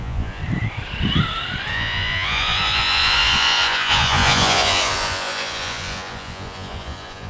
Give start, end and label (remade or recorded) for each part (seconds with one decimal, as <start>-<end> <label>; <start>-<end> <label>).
0.0-0.4 remade; 0.4-1.7 recorded; 1.7-7.3 remade